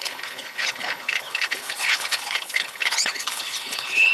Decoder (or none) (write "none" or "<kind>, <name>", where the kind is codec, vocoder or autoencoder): codec, HILCodec